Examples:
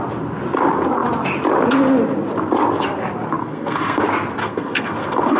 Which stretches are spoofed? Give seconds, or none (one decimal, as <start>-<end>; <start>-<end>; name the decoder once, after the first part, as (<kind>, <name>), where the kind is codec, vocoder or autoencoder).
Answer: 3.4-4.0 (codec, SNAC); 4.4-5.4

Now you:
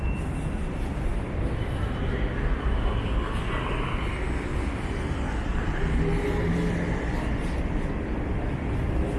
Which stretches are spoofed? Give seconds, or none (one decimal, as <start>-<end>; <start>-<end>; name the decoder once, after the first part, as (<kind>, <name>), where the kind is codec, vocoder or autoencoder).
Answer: none

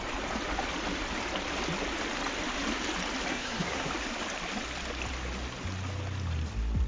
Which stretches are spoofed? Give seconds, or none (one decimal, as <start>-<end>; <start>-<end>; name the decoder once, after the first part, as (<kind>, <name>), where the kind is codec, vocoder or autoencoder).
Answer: 3.3-3.9 (codec, SNAC)